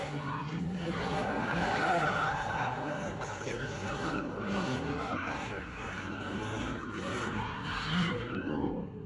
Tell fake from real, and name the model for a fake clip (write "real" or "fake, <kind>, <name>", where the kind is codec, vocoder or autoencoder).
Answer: fake, codec, SNAC